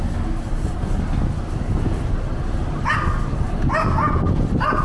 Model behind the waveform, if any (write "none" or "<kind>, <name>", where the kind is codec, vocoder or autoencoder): none